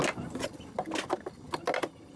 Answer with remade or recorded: recorded